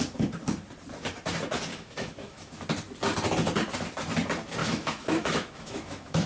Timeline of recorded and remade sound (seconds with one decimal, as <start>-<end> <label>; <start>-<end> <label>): 0.0-1.7 recorded; 1.7-2.6 remade; 2.6-4.6 recorded; 4.6-6.3 remade